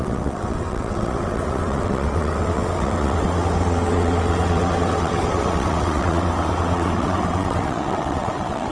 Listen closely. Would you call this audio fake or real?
fake